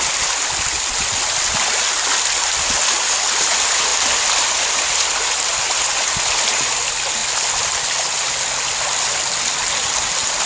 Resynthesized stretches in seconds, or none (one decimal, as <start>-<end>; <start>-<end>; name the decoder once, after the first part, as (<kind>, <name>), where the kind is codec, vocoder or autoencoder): none

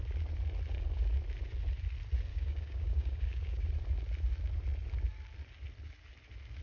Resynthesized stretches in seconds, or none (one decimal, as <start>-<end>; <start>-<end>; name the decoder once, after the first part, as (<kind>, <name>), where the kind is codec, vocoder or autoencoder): 2.3-3.7 (codec, DAC)

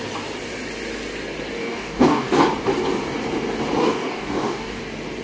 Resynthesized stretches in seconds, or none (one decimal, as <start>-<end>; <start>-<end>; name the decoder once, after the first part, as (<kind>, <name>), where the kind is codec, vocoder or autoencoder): 1.6-2.4 (codec, DAC); 3.8-4.8

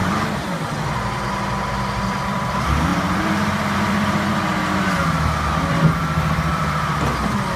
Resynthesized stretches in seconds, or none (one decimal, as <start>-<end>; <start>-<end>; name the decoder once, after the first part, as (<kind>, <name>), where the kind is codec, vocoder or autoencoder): 2.0-4.3 (vocoder, BigVGAN v2)